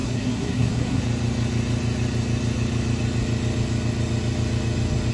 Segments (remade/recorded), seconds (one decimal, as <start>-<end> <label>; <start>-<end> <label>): 0.0-1.0 remade; 1.0-5.1 recorded